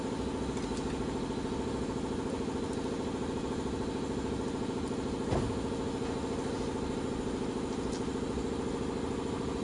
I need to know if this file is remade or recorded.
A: recorded